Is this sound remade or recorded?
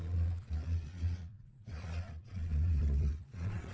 remade